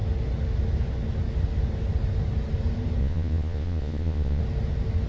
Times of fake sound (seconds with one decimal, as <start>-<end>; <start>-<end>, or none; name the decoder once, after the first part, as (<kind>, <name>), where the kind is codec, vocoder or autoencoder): 3.0-4.4 (vocoder, Vocos)